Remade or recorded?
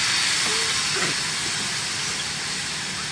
recorded